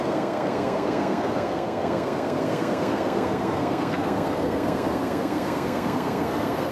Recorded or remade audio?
remade